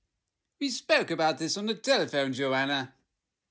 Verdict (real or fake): real